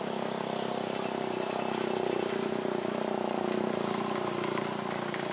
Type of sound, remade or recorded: recorded